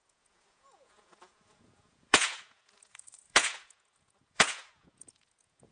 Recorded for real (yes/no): no